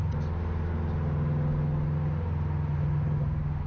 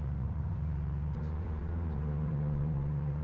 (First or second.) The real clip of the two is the first